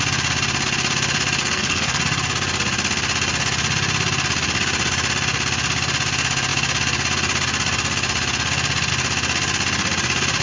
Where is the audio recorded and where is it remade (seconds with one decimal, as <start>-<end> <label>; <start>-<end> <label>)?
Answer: 0.0-1.4 recorded; 1.4-2.0 remade; 2.0-10.4 recorded